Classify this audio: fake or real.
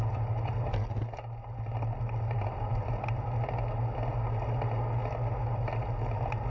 real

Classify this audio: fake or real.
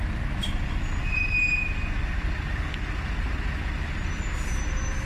real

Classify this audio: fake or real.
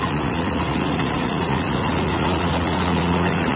fake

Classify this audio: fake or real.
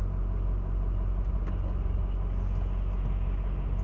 real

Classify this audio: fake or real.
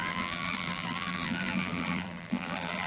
fake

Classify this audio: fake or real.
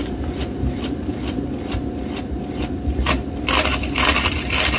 real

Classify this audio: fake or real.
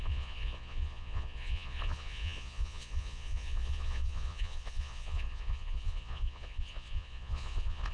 fake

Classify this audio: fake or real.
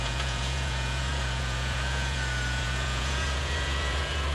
fake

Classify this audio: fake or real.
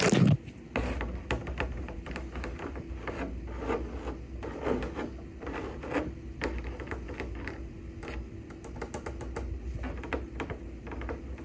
real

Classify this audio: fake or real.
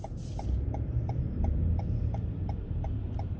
fake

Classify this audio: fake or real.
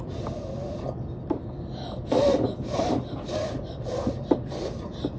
fake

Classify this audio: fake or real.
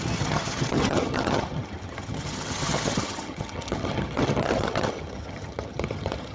fake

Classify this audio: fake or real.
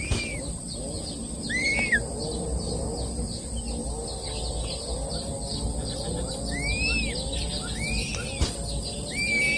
real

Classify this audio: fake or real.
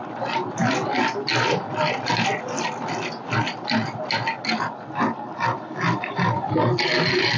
real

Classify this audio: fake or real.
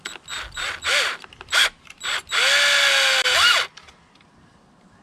real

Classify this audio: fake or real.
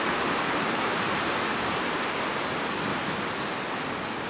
real